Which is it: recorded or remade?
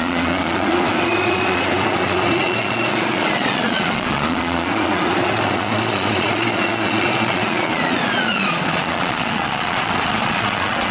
remade